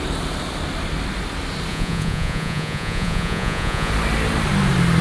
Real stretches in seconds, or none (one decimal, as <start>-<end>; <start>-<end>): 0.0-1.7; 3.9-5.0